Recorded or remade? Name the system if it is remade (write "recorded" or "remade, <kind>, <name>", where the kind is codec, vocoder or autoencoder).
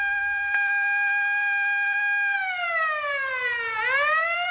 remade, vocoder, BigVGAN v2